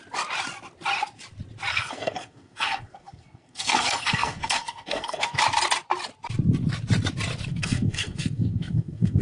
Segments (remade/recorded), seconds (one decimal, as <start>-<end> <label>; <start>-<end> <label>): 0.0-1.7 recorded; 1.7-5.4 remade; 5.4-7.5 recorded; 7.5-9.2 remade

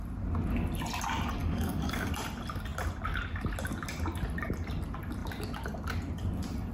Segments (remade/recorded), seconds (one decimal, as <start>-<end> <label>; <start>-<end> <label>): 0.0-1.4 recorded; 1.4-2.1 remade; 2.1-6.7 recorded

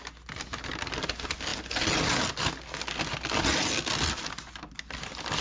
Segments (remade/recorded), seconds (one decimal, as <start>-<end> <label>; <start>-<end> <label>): 0.0-5.4 recorded

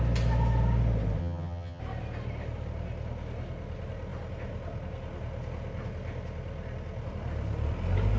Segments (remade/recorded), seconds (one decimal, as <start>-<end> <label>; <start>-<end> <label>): 0.0-1.2 recorded; 1.2-1.8 remade; 1.8-8.2 recorded

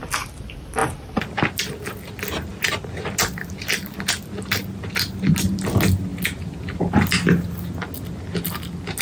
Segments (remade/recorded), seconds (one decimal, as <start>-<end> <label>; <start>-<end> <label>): 0.0-0.8 recorded; 0.8-1.6 remade; 1.6-9.0 recorded